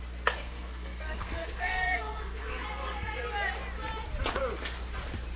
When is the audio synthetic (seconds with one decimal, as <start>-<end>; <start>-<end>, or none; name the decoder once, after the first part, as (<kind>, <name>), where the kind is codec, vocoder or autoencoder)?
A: 0.4-3.2 (codec, SNAC)